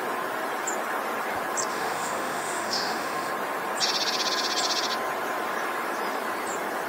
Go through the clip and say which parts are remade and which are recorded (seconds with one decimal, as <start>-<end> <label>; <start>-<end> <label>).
0.0-1.7 recorded; 1.7-3.3 remade; 3.3-6.9 recorded

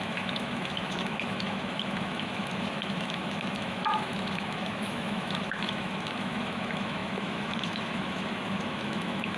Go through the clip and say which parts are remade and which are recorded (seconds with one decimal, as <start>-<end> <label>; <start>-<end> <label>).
0.0-9.4 remade

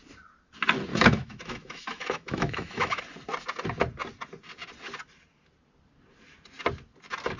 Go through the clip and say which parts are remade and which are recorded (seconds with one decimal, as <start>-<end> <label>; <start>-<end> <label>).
0.0-0.9 recorded; 0.9-3.0 remade; 3.0-7.4 recorded

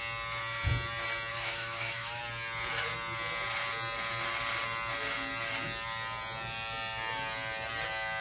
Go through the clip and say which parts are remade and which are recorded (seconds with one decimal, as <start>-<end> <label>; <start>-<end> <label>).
0.0-1.3 recorded; 1.3-2.2 remade; 2.2-8.2 recorded